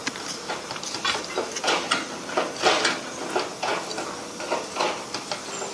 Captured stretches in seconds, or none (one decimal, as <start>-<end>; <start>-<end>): 3.0-5.7